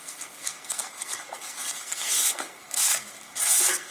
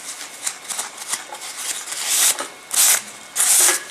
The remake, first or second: first